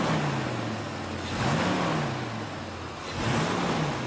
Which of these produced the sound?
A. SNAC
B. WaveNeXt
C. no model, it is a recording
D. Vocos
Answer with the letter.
C